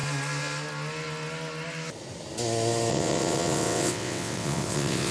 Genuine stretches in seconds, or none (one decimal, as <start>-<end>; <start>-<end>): 0.0-2.9